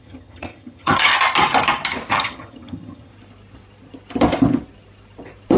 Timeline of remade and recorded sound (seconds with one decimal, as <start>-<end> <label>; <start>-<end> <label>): 0.0-1.1 remade; 1.1-2.1 recorded; 2.1-3.1 remade; 3.1-5.6 recorded